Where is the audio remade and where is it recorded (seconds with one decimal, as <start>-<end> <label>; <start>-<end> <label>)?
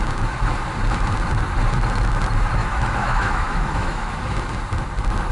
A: 0.0-2.6 recorded; 2.6-4.1 remade; 4.1-5.3 recorded